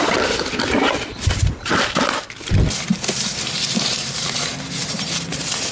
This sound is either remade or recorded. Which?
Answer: recorded